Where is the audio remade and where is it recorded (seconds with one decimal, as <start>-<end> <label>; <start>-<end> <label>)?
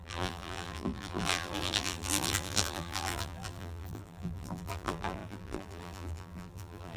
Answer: 0.0-7.0 remade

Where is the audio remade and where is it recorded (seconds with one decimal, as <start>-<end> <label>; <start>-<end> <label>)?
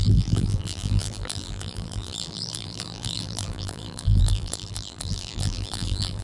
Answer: 0.0-6.2 remade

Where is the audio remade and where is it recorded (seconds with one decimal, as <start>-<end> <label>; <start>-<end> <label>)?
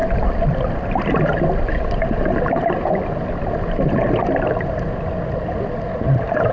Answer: 0.0-6.5 recorded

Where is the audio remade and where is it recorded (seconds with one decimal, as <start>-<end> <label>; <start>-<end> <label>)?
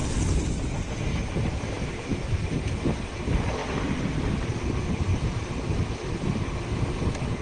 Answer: 0.0-2.1 remade; 2.1-3.2 recorded; 3.2-7.4 remade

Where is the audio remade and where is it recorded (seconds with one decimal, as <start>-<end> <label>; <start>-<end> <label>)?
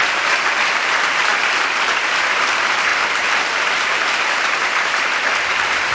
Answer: 0.0-5.9 remade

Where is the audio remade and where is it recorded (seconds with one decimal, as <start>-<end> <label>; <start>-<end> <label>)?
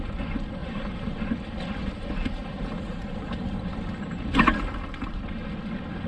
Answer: 0.0-0.6 recorded; 0.6-1.2 remade; 1.2-1.8 recorded; 1.8-5.1 remade; 5.1-6.1 recorded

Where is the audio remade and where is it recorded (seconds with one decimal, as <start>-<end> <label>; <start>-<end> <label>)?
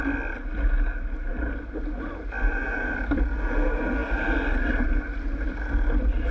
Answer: 0.0-6.3 recorded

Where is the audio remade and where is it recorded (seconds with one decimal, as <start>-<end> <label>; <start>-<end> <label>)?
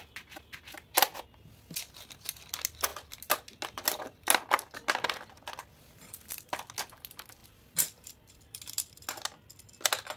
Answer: 0.0-7.4 recorded; 7.4-8.3 remade; 8.3-10.2 recorded